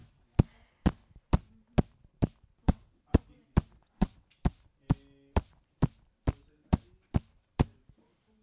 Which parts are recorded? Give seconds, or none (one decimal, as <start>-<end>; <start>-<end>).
0.0-2.6; 3.2-3.8; 4.3-8.4